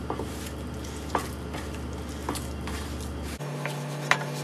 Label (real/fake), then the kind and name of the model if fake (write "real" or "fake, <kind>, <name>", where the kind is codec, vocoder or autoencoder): real